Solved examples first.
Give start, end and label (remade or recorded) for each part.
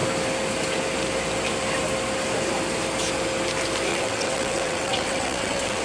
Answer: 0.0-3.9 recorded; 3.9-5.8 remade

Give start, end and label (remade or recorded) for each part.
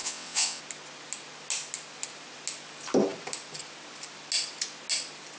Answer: 0.0-0.6 remade; 0.6-5.4 recorded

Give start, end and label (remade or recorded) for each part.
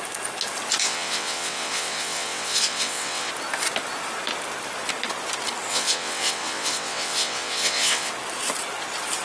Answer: 0.0-0.8 recorded; 0.8-3.3 remade; 3.3-5.7 recorded; 5.7-8.1 remade; 8.1-9.2 recorded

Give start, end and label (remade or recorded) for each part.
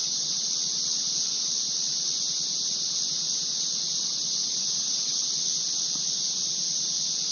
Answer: 0.0-0.5 remade; 0.5-4.4 recorded; 4.4-5.3 remade; 5.3-7.3 recorded